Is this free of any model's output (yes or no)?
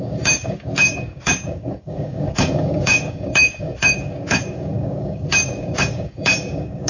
no